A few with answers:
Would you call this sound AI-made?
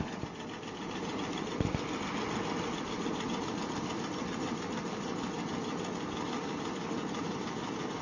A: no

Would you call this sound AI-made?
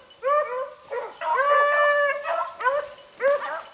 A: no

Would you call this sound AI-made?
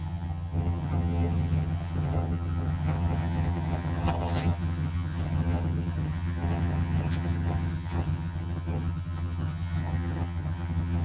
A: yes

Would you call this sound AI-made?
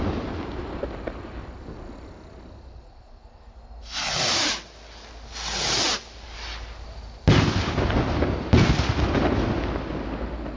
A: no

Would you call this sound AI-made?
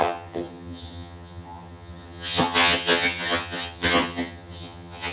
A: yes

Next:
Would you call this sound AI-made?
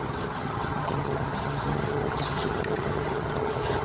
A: yes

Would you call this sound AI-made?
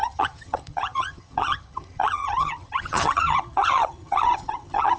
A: yes